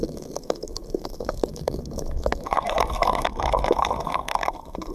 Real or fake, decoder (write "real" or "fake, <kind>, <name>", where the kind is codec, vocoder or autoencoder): fake, codec, SNAC